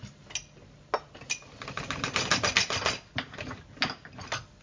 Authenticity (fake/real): real